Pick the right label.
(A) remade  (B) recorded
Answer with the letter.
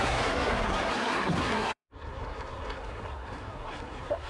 A